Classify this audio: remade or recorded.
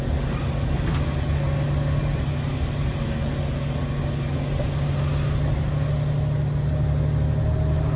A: recorded